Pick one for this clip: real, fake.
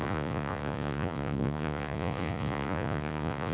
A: fake